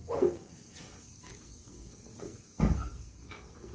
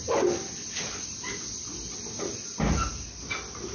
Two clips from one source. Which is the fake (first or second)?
first